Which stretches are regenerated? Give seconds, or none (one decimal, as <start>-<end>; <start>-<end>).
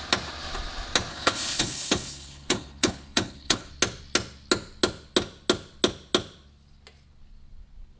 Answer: 1.1-3.7